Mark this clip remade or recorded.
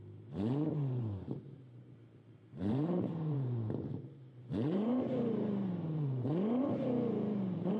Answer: remade